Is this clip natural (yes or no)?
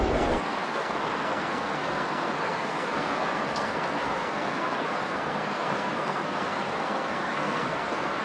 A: no